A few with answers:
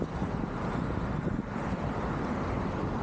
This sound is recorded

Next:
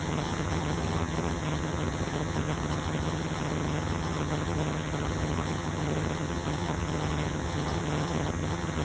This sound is remade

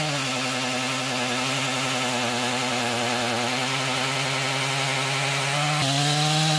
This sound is recorded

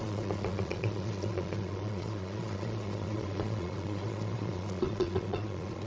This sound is remade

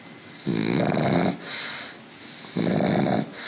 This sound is recorded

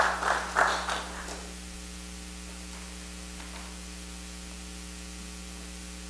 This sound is recorded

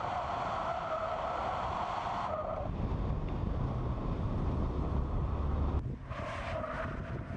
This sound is recorded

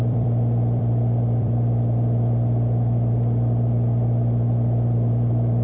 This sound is remade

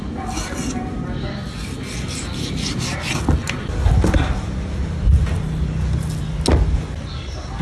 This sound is recorded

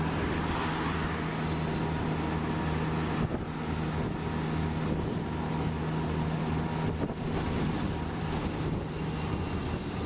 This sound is recorded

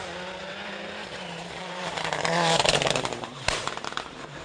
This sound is remade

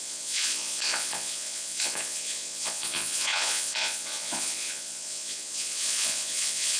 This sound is remade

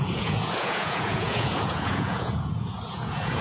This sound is remade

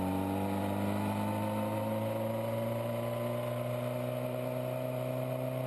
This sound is recorded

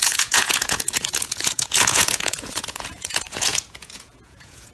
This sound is remade